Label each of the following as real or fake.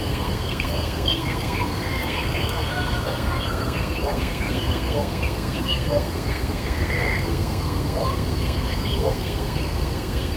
fake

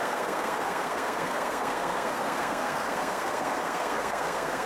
fake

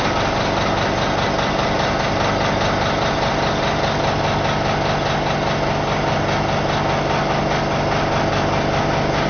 real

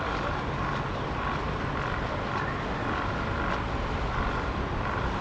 real